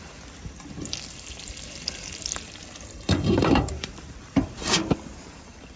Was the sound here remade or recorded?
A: remade